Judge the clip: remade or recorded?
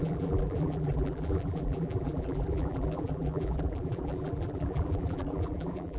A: remade